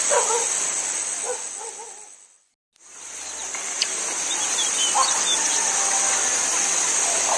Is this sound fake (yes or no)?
no